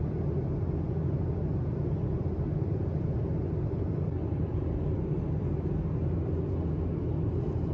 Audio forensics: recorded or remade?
recorded